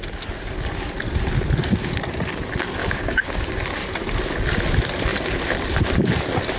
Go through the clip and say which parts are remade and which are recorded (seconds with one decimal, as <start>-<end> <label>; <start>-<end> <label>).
0.0-2.8 recorded; 2.8-3.4 remade; 3.4-6.6 recorded